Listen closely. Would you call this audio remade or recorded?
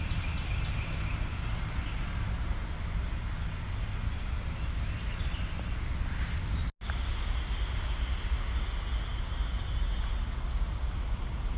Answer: recorded